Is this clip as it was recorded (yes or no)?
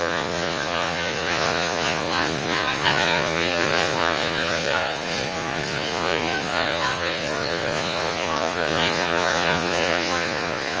no